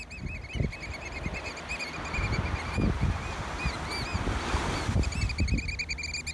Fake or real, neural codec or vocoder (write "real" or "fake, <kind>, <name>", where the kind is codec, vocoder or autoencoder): real